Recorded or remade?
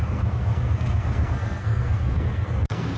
remade